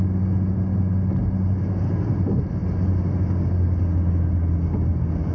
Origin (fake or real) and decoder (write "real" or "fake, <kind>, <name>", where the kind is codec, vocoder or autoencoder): real